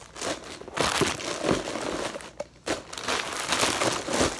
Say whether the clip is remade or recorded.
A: recorded